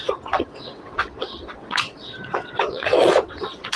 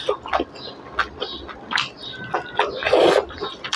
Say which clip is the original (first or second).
second